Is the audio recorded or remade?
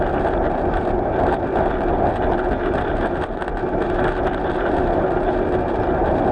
recorded